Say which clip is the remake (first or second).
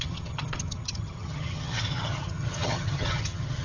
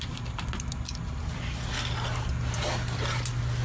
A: first